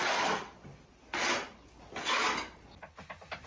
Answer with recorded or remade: recorded